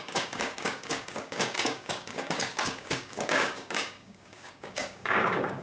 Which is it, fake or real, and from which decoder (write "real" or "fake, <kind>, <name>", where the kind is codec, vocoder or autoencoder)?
fake, codec, DAC